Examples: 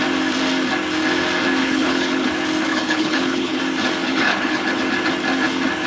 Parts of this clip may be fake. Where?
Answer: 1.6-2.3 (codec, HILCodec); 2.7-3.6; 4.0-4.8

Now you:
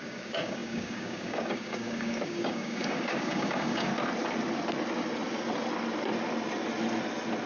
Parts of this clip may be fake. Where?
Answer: 0.0-3.9 (codec, DAC)

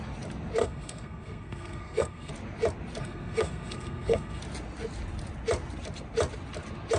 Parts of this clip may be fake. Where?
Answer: 0.6-2.3 (codec, SNAC); 3.0-4.4

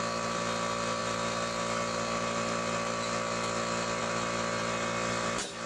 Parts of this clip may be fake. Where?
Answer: none

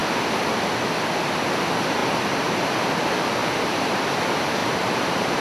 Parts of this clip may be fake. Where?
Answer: 2.0-2.7 (vocoder, BigVGAN v2); 3.4-4.0; 4.6-5.4

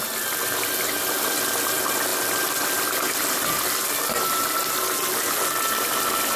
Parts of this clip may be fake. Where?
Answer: none

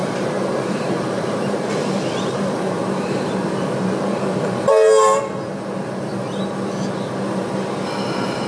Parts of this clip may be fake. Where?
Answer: 0.0-4.7 (vocoder, BigVGAN v2)

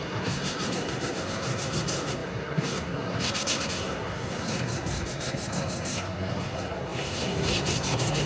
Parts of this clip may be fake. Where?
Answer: 0.0-8.3 (codec, SNAC)